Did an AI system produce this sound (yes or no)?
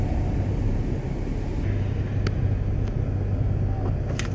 no